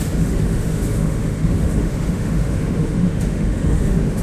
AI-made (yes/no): yes